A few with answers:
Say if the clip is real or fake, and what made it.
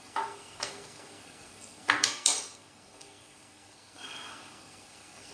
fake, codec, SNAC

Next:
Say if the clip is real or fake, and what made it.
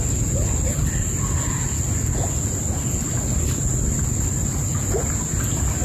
real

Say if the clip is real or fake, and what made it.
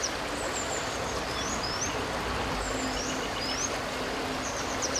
real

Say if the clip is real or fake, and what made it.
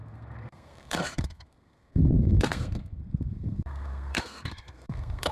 fake, codec, SNAC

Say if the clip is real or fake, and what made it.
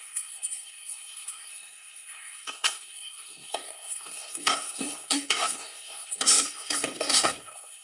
fake, codec, SNAC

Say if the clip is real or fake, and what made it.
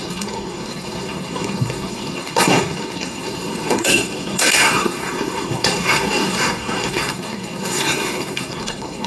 fake, codec, SNAC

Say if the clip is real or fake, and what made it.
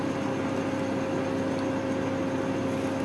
real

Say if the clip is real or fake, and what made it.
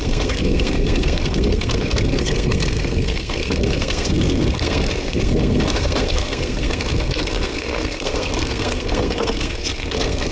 fake, codec, SNAC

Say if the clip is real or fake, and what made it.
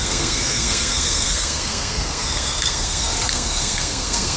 fake, codec, SNAC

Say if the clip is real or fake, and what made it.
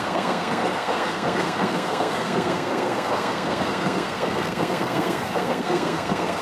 fake, codec, SNAC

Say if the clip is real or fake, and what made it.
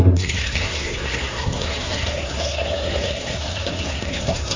fake, codec, SNAC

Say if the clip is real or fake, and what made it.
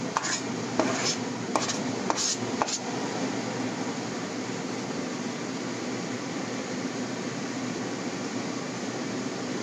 real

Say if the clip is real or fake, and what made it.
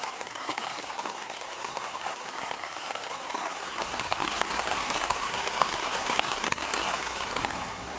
fake, codec, SNAC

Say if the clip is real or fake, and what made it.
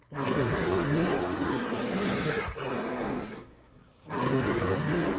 fake, codec, SNAC